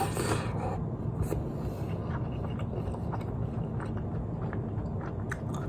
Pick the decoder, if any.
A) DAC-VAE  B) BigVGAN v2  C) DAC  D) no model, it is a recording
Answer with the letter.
D